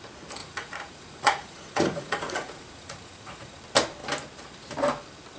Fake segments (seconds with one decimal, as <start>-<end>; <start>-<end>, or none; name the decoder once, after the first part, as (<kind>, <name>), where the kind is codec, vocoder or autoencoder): 0.4-3.6 (vocoder, Vocos)